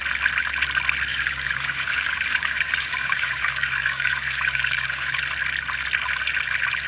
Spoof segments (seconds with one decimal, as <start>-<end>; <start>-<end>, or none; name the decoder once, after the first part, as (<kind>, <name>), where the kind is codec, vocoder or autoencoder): 1.1-5.2 (codec, DAC)